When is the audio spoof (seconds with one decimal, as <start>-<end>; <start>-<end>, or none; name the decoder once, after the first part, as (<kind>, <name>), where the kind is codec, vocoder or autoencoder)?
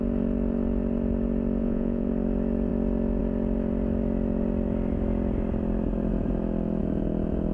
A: 1.6-2.1 (vocoder, Vocos)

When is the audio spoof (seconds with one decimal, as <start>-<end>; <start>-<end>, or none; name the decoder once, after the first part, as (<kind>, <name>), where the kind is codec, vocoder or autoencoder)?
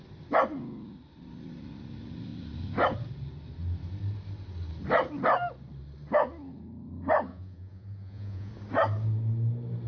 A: 7.3-8.5 (vocoder, Vocos)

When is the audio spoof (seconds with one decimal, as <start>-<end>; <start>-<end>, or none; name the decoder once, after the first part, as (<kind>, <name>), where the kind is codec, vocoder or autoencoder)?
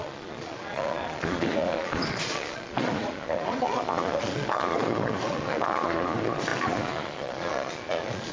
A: 0.0-8.3 (vocoder, Vocos)